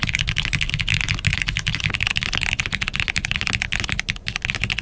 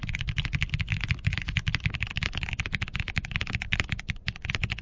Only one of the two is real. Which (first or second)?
first